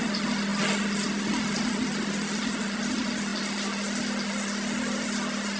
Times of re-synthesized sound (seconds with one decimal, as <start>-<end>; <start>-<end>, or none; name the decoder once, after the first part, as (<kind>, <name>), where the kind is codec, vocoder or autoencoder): none